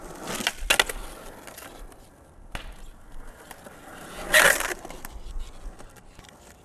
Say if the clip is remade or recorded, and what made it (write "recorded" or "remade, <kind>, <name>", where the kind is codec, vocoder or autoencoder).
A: recorded